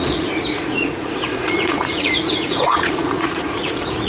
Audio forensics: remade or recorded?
remade